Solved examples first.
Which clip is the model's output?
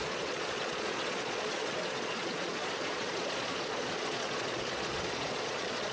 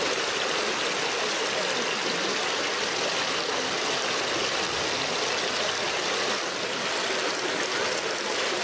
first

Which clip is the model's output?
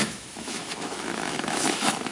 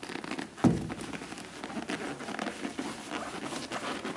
first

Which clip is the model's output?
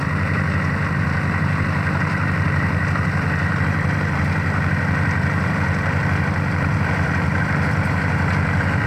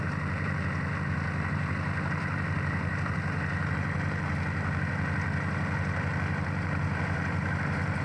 first